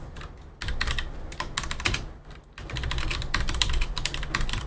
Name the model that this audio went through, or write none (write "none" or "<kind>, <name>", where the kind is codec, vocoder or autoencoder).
none